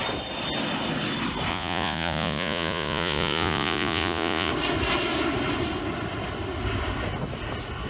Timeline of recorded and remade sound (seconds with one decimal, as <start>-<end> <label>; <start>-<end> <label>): 0.0-1.5 recorded; 1.5-4.5 remade; 4.5-7.9 recorded